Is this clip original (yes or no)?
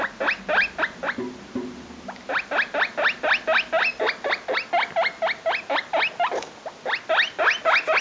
yes